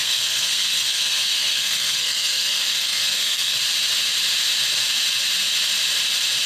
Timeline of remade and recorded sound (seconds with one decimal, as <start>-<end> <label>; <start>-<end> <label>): 0.0-3.6 remade; 3.6-6.5 recorded